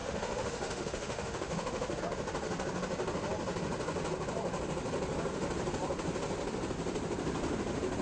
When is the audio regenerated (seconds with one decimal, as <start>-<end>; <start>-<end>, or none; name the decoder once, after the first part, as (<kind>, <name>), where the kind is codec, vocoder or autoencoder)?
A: 0.0-2.0 (autoencoder, DAC-VAE)